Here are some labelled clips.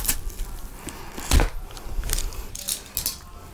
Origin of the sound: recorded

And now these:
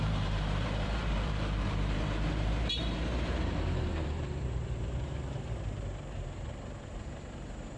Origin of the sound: remade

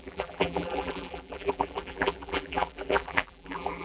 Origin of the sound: remade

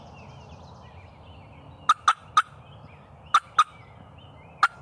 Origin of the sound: recorded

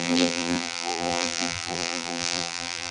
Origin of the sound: remade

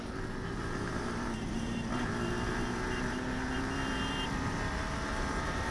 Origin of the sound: remade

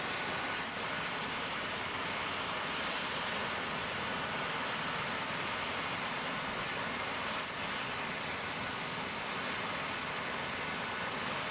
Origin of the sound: recorded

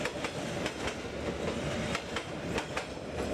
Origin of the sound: recorded